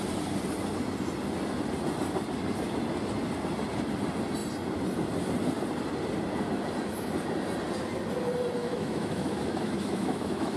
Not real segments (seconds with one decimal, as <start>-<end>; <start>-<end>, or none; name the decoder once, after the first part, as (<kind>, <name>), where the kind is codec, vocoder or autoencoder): 8.6-10.6 (autoencoder, DAC-VAE)